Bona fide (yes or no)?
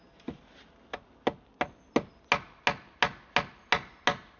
yes